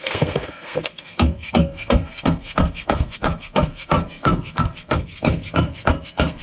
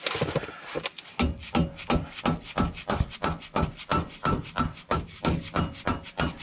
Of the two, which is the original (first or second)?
second